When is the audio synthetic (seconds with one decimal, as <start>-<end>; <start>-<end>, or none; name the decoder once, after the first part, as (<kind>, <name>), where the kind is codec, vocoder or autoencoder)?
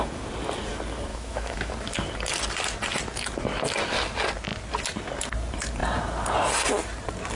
1.1-1.7 (autoencoder, DAC-VAE)